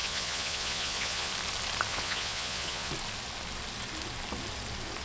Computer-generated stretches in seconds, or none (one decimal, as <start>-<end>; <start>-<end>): 0.0-1.3; 1.9-2.9